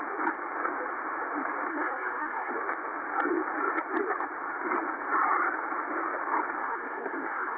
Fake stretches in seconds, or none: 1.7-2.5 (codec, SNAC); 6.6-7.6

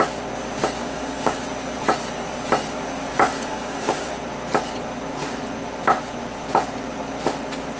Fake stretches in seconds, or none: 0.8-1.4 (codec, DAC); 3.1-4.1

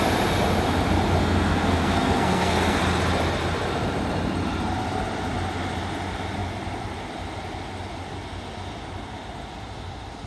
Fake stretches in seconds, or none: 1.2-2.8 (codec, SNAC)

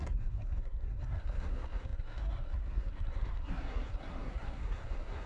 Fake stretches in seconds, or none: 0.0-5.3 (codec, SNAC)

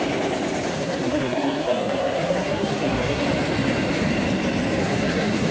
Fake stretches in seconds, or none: 0.7-3.2 (codec, SNAC); 4.8-5.5

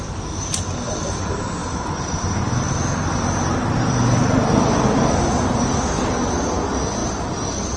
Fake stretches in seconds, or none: none

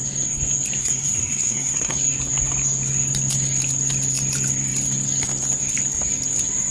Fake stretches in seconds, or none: 0.8-1.9 (codec, SNAC)